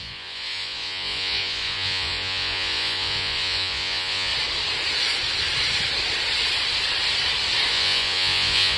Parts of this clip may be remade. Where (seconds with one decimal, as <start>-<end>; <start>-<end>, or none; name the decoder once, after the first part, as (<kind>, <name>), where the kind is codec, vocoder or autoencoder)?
0.0-4.3 (vocoder, Vocos); 7.7-8.8